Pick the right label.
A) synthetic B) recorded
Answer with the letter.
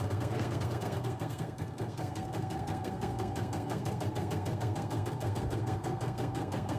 A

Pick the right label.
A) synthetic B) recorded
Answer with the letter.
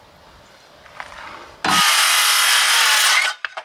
B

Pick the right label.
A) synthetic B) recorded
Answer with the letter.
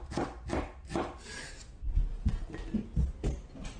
B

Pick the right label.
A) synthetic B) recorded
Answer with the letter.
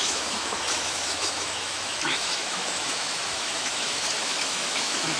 A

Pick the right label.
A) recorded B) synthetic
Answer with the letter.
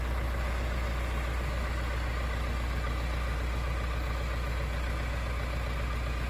A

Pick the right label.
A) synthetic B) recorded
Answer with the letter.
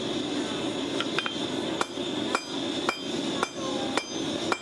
B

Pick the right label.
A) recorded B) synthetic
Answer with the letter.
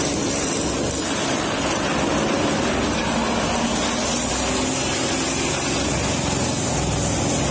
A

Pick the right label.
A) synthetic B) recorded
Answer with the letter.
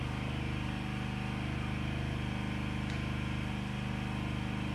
B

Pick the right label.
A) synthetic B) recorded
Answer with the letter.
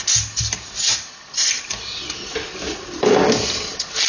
B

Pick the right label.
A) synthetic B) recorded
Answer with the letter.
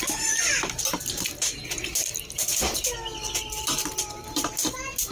B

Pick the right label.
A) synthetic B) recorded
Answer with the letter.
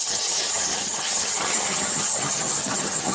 A